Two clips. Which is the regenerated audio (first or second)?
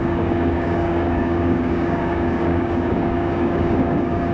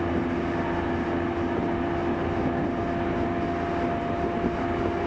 first